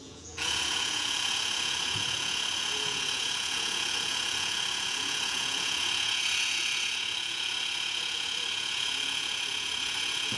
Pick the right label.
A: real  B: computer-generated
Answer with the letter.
B